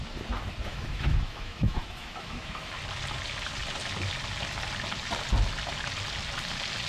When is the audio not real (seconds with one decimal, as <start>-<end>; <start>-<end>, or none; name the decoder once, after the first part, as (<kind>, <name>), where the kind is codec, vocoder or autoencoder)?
0.7-2.7 (autoencoder, DAC-VAE)